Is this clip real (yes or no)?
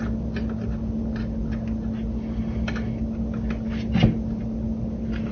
yes